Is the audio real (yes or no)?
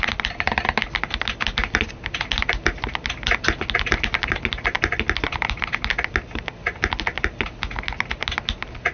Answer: yes